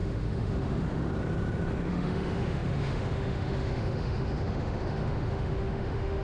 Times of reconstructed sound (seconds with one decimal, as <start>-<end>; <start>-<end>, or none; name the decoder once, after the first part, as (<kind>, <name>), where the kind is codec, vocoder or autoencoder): 0.0-1.1 (autoencoder, DAC-VAE); 1.9-6.2